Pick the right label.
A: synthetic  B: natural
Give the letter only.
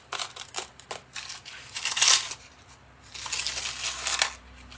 B